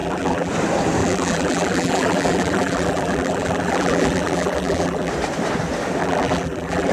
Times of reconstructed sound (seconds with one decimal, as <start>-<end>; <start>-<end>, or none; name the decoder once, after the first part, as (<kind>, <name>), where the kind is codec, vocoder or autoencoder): 0.0-0.5 (vocoder, BigVGAN v2); 1.0-5.1; 6.0-6.9